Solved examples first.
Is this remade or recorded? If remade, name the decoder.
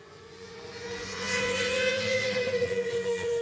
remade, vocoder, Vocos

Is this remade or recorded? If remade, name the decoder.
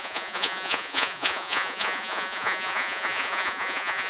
remade, vocoder, Vocos